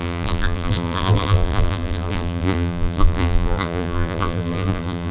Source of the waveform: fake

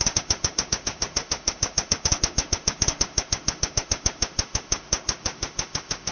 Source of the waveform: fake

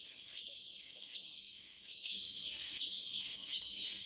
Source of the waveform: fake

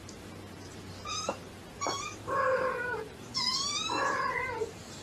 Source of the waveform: fake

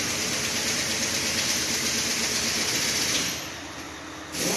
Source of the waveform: real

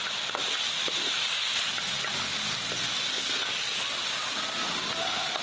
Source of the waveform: real